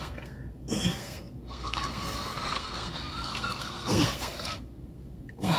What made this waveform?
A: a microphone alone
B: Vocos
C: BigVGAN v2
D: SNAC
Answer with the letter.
D